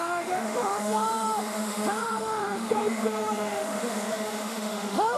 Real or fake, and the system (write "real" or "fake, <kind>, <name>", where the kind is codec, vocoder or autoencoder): fake, autoencoder, DAC-VAE